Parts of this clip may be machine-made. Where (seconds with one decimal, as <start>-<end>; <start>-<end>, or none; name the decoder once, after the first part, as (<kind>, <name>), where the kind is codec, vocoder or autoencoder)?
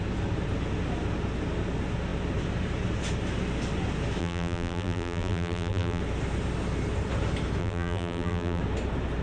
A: 4.2-6.0 (vocoder, BigVGAN v2); 7.6-8.6